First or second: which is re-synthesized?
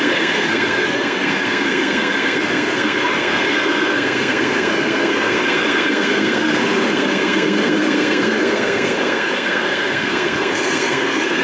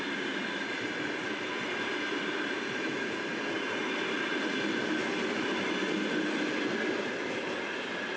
first